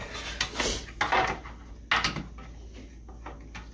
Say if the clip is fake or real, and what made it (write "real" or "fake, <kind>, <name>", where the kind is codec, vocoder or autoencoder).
real